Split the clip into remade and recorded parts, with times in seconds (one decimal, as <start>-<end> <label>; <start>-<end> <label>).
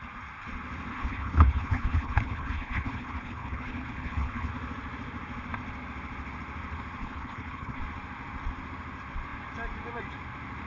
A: 0.0-0.9 recorded; 0.9-4.5 remade; 4.5-7.0 recorded; 7.0-7.8 remade; 7.8-10.7 recorded